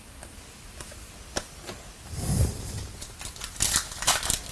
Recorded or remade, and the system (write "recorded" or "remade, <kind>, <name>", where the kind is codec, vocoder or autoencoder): recorded